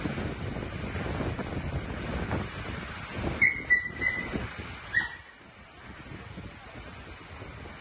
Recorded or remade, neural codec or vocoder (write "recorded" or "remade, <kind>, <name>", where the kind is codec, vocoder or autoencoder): recorded